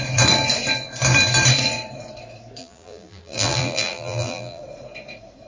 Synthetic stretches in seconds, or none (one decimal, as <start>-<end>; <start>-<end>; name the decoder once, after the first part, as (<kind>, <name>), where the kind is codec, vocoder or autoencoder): 2.6-4.6 (vocoder, BigVGAN v2)